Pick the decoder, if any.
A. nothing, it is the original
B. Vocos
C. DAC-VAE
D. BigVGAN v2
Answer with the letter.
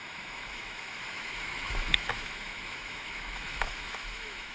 C